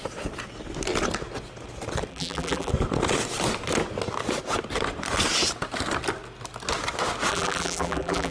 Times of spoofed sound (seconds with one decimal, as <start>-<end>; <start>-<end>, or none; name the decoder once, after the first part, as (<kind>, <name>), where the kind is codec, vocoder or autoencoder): 2.1-2.7 (vocoder, BigVGAN v2); 7.3-8.3